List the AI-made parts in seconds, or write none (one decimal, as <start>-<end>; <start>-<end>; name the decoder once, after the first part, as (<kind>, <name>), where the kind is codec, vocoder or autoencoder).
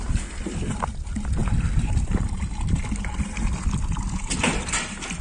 none